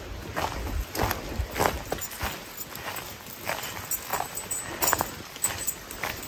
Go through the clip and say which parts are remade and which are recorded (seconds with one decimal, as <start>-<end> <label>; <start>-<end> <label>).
0.0-4.1 recorded; 4.1-4.7 remade; 4.7-6.3 recorded